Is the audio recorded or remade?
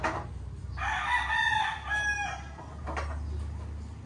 recorded